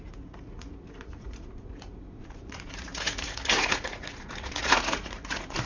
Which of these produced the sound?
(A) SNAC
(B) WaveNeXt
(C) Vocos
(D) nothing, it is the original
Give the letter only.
C